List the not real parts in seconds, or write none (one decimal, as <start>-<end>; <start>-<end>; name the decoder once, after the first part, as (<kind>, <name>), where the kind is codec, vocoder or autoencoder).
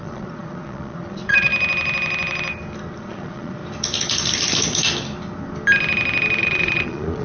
0.0-1.5 (vocoder, Vocos); 3.0-3.6; 6.4-7.2